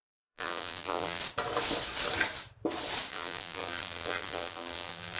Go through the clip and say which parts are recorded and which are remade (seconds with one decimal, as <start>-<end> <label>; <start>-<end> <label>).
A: 0.0-1.2 remade; 1.2-3.1 recorded; 3.1-5.2 remade